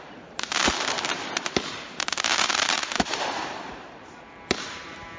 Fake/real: fake